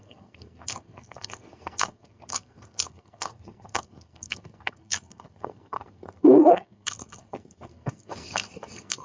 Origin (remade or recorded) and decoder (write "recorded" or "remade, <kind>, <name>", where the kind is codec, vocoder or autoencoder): remade, codec, SNAC